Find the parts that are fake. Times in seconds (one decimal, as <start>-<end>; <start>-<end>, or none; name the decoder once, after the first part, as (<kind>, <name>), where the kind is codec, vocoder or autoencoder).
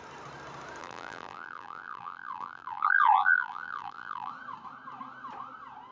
0.8-4.3 (vocoder, BigVGAN v2)